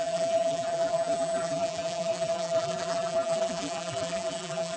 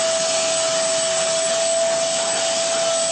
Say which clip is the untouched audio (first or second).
second